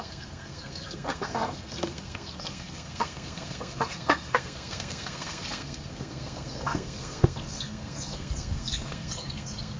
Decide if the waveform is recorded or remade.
remade